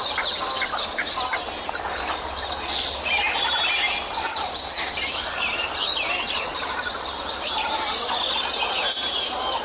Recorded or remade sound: recorded